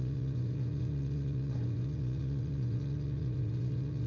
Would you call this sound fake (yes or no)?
yes